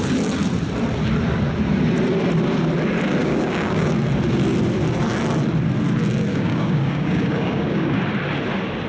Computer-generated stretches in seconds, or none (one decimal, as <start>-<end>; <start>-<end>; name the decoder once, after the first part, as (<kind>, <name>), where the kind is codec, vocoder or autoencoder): 3.2-3.9 (codec, DAC); 6.3-8.0